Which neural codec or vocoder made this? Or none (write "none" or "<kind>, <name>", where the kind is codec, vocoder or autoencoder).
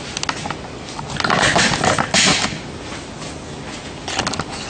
none